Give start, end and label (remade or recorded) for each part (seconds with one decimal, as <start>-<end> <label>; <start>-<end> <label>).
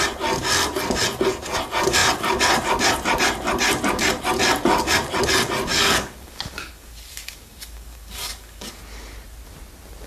0.0-5.7 recorded; 5.7-8.8 remade; 8.8-10.1 recorded